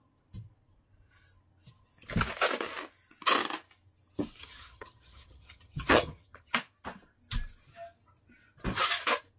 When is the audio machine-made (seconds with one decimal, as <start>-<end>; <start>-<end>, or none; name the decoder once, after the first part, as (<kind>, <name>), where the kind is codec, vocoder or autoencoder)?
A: 4.4-6.5 (vocoder, HiFi-GAN)